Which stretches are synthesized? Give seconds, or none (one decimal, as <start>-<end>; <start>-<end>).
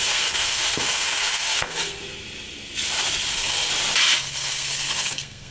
0.0-2.0; 3.3-3.7; 4.2-5.5